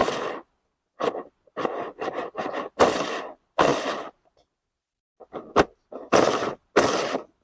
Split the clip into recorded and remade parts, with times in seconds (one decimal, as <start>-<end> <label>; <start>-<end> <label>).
0.0-7.4 recorded